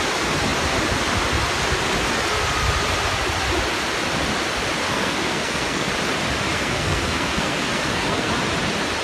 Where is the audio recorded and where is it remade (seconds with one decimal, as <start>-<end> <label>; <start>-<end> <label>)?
0.0-4.8 recorded; 4.8-5.9 remade; 5.9-6.5 recorded; 6.5-8.3 remade; 8.3-9.0 recorded

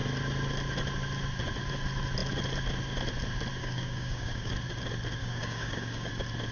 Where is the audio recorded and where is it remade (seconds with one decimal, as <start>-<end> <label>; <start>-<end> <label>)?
0.0-3.6 recorded; 3.6-4.5 remade; 4.5-5.2 recorded; 5.2-6.1 remade; 6.1-6.5 recorded

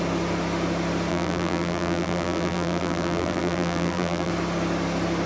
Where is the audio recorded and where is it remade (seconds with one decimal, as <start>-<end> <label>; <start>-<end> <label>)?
0.0-1.1 recorded; 1.1-4.3 remade; 4.3-5.3 recorded

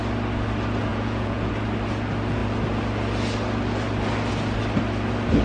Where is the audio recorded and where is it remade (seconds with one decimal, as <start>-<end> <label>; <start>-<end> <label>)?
0.0-0.9 recorded; 0.9-1.5 remade; 1.5-5.4 recorded

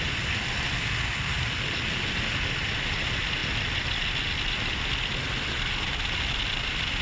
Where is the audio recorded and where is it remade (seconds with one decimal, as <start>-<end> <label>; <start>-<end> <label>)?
0.0-7.0 recorded

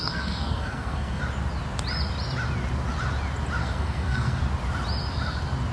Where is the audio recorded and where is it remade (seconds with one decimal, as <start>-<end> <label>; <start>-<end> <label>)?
0.0-1.2 remade; 1.2-3.6 recorded; 3.6-4.4 remade; 4.4-5.7 recorded

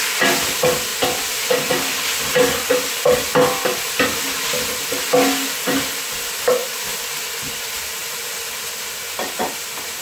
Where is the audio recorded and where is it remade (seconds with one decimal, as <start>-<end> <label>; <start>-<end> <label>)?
0.0-10.0 recorded

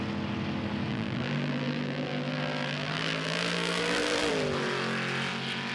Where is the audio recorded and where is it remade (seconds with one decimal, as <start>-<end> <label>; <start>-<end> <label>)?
0.0-0.9 recorded; 0.9-4.3 remade; 4.3-5.7 recorded